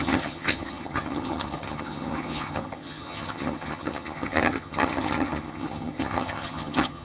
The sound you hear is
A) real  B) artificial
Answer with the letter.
B